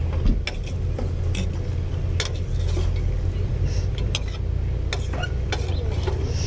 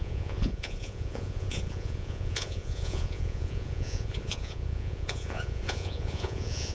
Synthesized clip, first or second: second